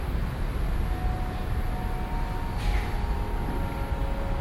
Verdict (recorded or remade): recorded